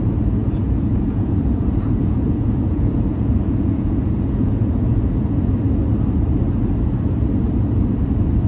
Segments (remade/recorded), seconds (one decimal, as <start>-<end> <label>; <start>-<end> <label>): 0.0-0.4 recorded; 0.4-5.5 remade; 5.5-8.5 recorded